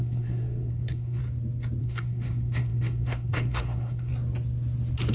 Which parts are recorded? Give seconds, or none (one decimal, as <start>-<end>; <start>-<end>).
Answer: 1.2-1.8; 4.1-5.1